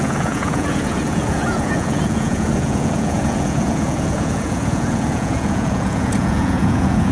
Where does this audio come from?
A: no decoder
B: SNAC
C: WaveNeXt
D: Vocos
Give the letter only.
D